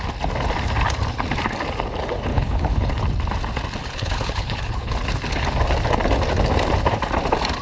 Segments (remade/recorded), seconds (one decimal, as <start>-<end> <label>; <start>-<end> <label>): 0.0-2.3 recorded; 2.3-3.0 remade; 3.0-3.8 recorded; 3.8-4.9 remade; 4.9-7.6 recorded

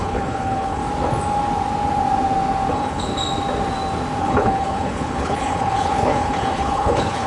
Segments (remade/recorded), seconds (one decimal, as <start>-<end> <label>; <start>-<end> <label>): 0.0-0.8 remade; 0.8-2.7 recorded; 2.7-3.1 remade; 3.1-4.2 recorded; 4.2-7.3 remade

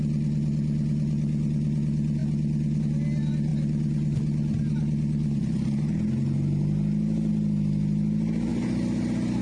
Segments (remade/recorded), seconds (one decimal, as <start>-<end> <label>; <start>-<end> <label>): 0.0-9.4 recorded

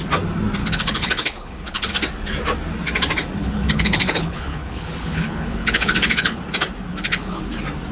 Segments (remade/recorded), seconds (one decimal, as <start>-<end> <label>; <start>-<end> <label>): 0.0-0.6 recorded; 0.6-1.9 remade; 1.9-3.4 recorded; 3.4-6.4 remade; 6.4-6.9 recorded; 6.9-7.4 remade; 7.4-7.9 recorded

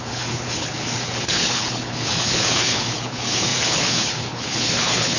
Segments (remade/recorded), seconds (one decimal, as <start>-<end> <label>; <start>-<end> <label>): 0.0-5.2 remade

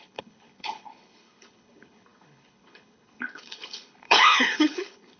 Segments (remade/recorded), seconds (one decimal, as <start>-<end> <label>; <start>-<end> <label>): 0.0-5.2 remade

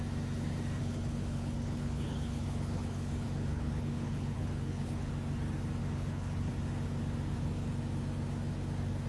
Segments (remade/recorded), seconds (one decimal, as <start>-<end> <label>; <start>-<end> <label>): 0.0-0.8 recorded; 0.8-5.1 remade; 5.1-5.8 recorded; 5.8-6.5 remade; 6.5-9.1 recorded

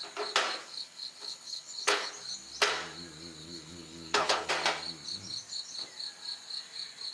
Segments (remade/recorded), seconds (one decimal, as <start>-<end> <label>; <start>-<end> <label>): 0.0-0.6 recorded; 0.6-2.1 remade; 2.1-3.4 recorded; 3.4-4.5 remade; 4.5-7.1 recorded